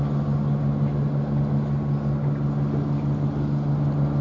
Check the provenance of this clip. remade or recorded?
recorded